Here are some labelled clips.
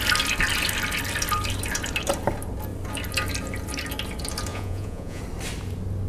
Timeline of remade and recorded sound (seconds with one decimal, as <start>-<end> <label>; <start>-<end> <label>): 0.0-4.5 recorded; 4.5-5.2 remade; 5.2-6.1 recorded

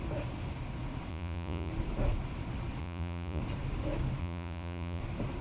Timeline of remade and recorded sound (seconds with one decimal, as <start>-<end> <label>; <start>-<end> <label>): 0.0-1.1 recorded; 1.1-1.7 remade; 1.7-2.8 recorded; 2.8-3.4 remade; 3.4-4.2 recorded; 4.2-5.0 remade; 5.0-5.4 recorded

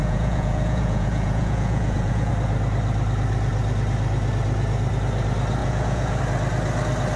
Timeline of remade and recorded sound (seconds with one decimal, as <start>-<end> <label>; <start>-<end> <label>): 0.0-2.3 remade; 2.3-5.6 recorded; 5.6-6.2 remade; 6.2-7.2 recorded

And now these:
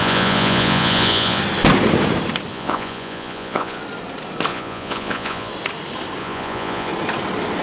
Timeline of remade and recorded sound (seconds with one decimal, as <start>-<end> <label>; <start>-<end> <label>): 0.0-1.4 remade; 1.4-2.5 recorded; 2.5-3.8 remade; 3.8-4.5 recorded; 4.5-5.5 remade; 5.5-6.2 recorded; 6.2-6.9 remade; 6.9-7.6 recorded

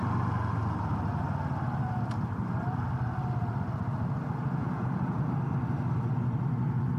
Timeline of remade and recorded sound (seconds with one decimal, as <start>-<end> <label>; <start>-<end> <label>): 0.0-4.6 recorded; 4.6-5.3 remade; 5.3-7.0 recorded